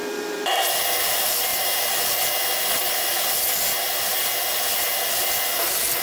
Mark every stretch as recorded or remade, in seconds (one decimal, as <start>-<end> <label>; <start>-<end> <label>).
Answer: 0.0-0.7 remade; 0.7-6.0 recorded